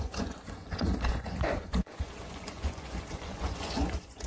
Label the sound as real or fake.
fake